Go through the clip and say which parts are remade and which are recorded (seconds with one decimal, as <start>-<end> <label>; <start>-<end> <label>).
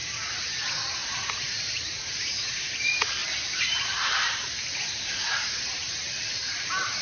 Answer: 0.0-0.6 recorded; 0.6-7.0 remade